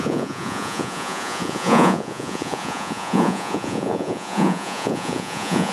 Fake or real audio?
fake